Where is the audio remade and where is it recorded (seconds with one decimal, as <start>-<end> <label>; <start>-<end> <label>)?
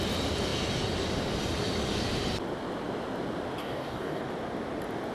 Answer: 0.0-3.6 recorded; 3.6-4.2 remade; 4.2-5.1 recorded